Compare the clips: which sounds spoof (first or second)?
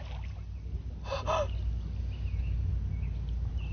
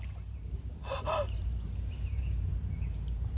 second